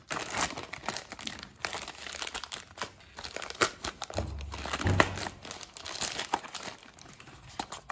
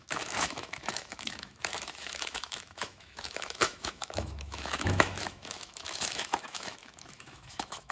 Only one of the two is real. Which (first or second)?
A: first